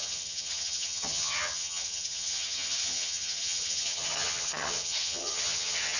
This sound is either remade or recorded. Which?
remade